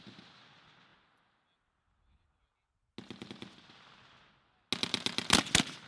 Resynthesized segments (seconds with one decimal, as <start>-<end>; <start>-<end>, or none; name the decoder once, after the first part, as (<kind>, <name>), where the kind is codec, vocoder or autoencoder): none